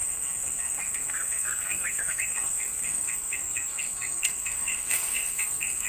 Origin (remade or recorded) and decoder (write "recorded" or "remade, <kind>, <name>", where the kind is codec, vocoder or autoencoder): remade, codec, SNAC